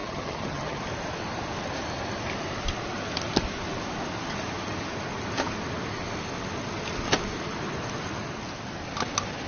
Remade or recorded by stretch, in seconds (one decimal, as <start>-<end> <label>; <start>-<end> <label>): 0.0-0.8 remade; 0.8-9.5 recorded